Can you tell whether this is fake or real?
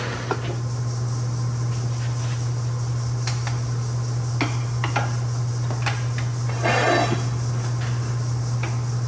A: real